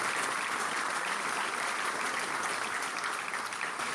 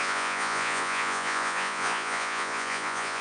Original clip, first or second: first